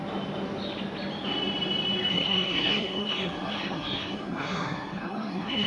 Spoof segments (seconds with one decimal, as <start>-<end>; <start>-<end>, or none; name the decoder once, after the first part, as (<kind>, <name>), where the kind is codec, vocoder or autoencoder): 2.1-5.7 (codec, SNAC)